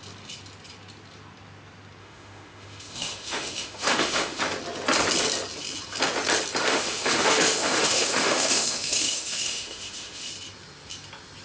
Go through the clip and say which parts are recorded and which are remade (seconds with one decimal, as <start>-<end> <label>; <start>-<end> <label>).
0.0-2.0 recorded; 2.0-4.4 remade; 4.4-6.6 recorded; 6.6-10.3 remade; 10.3-11.4 recorded